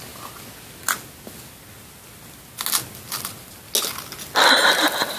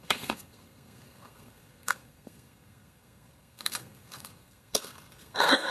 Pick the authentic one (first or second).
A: first